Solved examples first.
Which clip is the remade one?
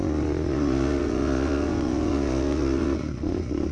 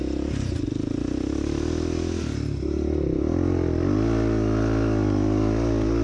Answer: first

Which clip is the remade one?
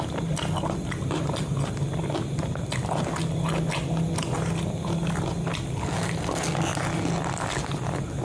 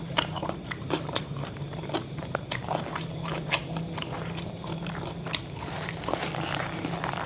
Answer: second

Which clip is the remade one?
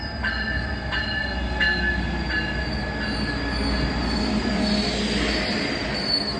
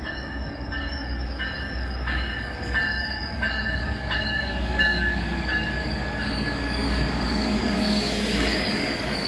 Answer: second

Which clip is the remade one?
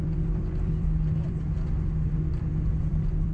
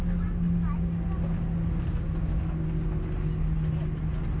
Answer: first